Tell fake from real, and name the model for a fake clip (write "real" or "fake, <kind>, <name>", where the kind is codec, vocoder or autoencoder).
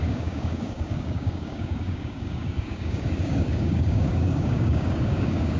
fake, codec, DAC